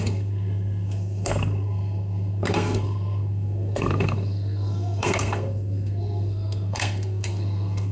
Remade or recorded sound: remade